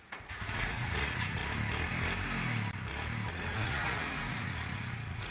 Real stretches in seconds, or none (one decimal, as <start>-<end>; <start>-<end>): 1.4-3.3